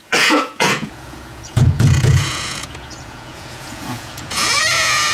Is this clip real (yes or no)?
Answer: no